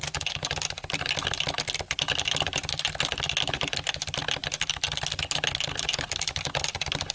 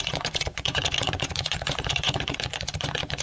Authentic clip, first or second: first